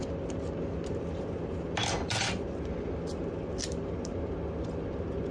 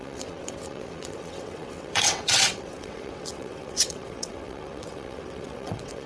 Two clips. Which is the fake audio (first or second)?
second